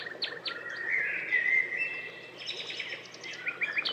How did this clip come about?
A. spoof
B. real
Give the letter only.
B